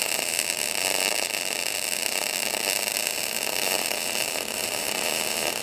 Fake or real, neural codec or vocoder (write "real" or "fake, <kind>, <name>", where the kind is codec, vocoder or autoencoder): fake, vocoder, BigVGAN v2